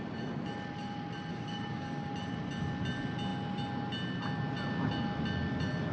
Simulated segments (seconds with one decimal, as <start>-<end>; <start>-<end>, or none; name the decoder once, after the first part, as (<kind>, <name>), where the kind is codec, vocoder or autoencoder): 1.3-2.1 (codec, DAC)